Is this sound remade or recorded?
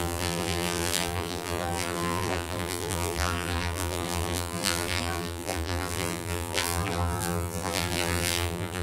remade